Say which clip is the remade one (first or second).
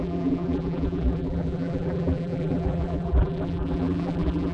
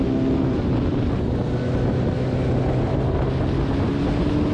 first